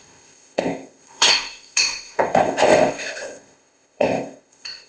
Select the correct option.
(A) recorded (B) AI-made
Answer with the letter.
B